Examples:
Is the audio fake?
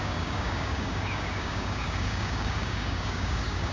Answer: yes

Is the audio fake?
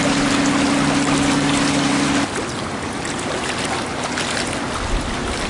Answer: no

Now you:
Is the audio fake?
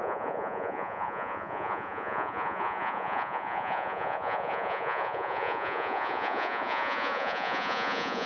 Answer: yes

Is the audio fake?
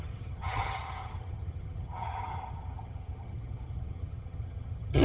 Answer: yes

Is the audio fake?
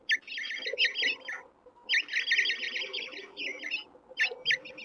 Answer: no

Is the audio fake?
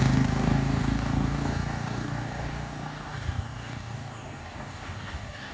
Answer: yes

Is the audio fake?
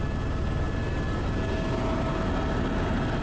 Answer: no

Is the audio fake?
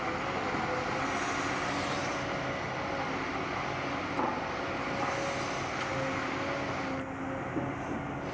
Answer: no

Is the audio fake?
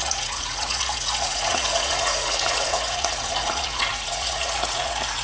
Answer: yes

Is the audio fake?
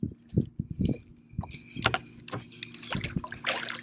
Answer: no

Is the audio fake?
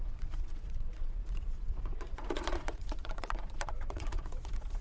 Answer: yes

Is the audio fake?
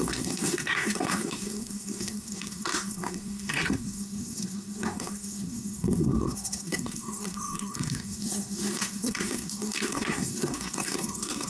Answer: yes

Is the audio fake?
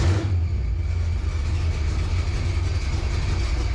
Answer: no